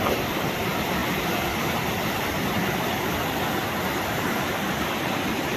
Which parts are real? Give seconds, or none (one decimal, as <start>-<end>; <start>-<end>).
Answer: 0.0-5.6